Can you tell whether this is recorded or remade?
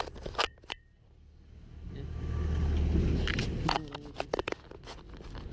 recorded